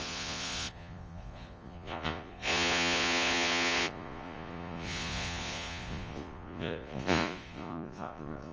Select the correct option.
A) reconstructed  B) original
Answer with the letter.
A